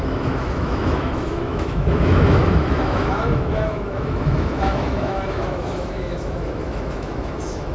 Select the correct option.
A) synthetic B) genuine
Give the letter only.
A